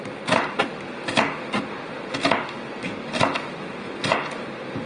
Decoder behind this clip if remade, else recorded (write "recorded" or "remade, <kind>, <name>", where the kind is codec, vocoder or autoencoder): recorded